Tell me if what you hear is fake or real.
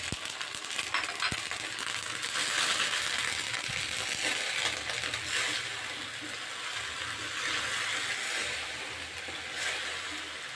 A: real